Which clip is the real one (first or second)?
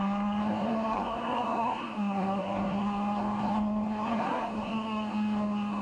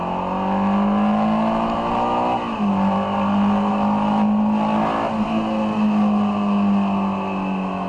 second